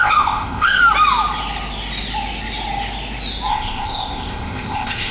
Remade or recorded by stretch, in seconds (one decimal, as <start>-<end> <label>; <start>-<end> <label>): 0.0-0.8 remade; 0.8-3.5 recorded; 3.5-5.1 remade